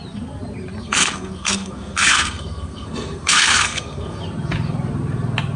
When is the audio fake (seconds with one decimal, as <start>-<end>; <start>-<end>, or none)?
0.8-4.2